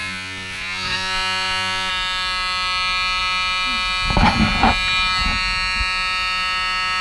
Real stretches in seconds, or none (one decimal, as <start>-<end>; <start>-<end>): 1.9-7.0